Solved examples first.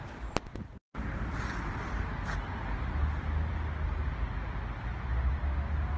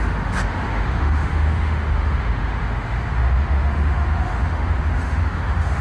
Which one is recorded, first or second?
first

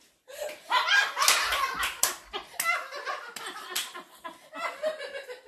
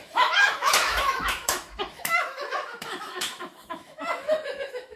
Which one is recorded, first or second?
first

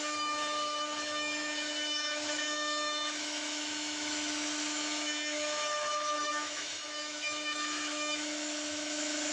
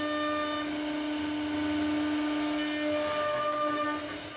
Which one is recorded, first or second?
second